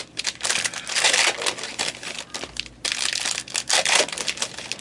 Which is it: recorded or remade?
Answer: recorded